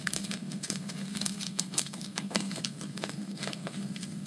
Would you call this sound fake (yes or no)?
yes